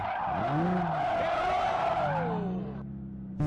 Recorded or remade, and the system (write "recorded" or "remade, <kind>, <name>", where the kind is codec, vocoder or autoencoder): recorded